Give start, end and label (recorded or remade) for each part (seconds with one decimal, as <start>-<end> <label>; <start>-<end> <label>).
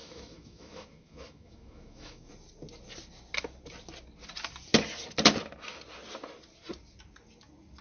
0.0-2.3 remade; 2.3-7.8 recorded